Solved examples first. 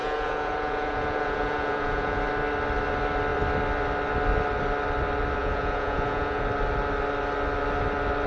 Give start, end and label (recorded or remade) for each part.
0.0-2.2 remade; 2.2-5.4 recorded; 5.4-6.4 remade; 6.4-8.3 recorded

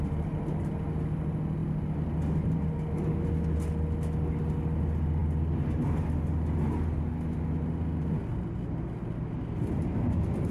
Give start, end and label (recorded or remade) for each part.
0.0-10.5 recorded

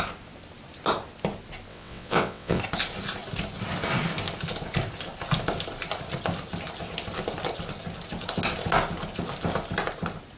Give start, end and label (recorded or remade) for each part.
0.0-1.7 recorded; 1.7-2.6 remade; 2.6-10.4 recorded

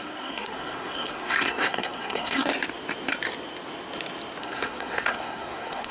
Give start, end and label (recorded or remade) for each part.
0.0-2.5 remade; 2.5-4.4 recorded; 4.4-5.9 remade

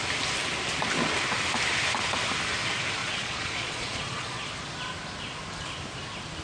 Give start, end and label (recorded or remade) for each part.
0.0-3.0 recorded; 3.0-4.5 remade; 4.5-6.4 recorded

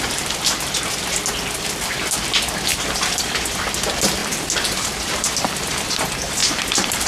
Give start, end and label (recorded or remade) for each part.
0.0-2.7 recorded; 2.7-3.7 remade; 3.7-4.2 recorded; 4.2-6.0 remade; 6.0-6.4 recorded; 6.4-7.1 remade

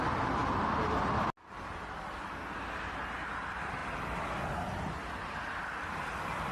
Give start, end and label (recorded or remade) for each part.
0.0-6.5 recorded

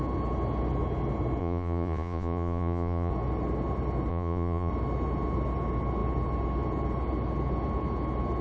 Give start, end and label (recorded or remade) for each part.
0.0-1.4 recorded; 1.4-3.1 remade; 3.1-4.1 recorded; 4.1-4.7 remade; 4.7-8.4 recorded